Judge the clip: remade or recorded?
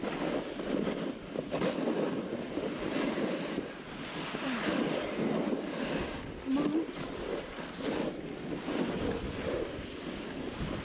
recorded